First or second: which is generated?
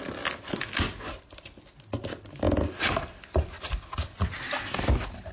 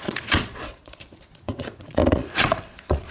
second